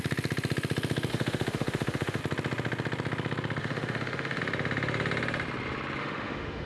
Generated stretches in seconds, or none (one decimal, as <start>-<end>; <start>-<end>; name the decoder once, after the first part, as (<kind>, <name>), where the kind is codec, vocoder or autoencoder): 1.1-2.2 (autoencoder, DAC-VAE); 3.6-4.4; 6.0-6.7